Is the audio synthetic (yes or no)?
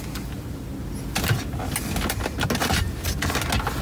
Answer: no